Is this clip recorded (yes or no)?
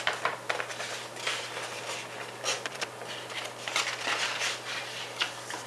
yes